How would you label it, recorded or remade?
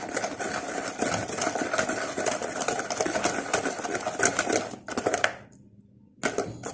recorded